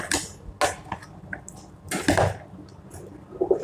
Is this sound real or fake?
real